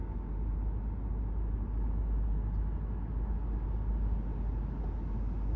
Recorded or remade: recorded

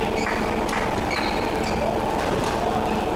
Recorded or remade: remade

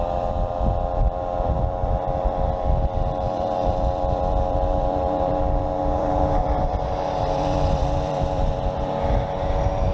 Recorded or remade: remade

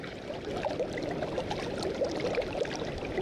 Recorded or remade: remade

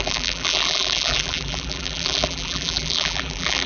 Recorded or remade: remade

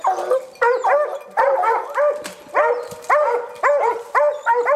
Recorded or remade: recorded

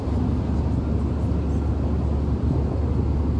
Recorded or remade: recorded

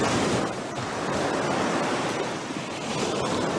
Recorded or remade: recorded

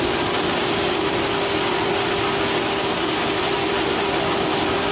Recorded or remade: recorded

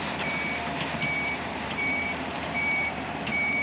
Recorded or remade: remade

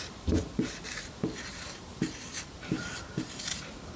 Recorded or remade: recorded